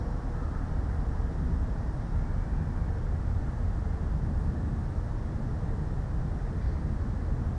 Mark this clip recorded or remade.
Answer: recorded